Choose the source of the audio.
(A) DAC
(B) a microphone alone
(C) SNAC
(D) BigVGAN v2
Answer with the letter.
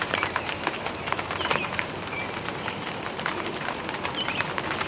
D